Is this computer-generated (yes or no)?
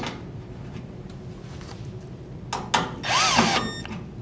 no